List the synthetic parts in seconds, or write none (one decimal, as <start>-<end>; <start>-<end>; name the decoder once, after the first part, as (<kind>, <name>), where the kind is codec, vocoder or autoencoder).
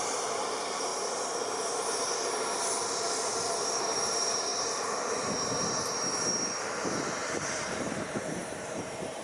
0.0-0.9 (vocoder, BigVGAN v2); 3.8-4.5; 6.6-9.2